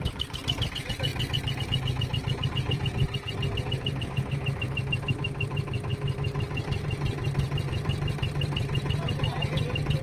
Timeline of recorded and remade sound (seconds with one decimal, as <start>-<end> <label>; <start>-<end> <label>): 0.0-1.1 remade; 1.1-1.6 recorded; 1.6-10.0 remade